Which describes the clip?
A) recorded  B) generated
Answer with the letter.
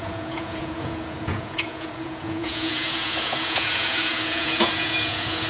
B